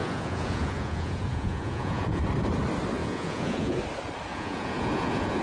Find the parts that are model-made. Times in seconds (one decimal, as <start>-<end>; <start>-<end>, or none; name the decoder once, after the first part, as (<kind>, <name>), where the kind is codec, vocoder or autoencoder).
0.0-2.2 (vocoder, Vocos); 3.0-3.8; 4.3-5.4